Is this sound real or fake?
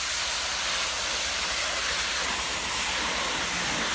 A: real